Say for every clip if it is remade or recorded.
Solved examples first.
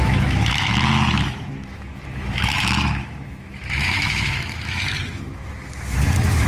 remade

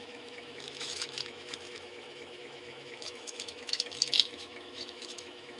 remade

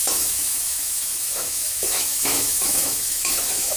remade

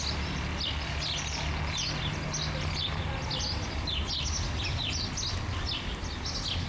recorded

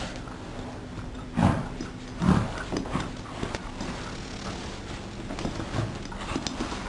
recorded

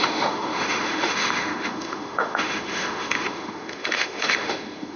remade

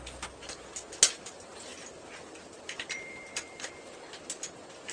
recorded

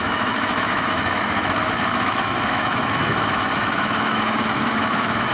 remade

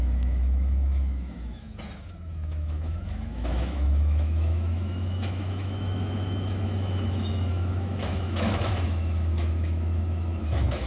remade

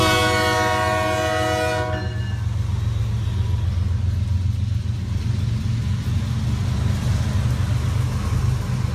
recorded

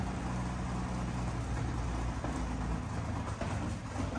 recorded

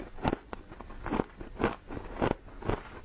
recorded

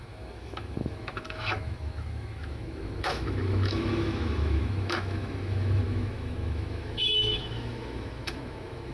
remade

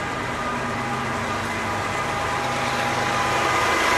recorded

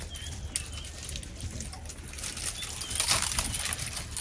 recorded